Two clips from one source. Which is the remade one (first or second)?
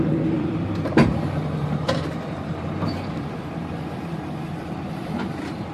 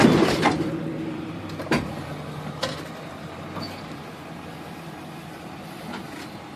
first